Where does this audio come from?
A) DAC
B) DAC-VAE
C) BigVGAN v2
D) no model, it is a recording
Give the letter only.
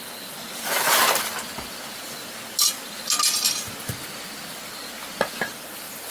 D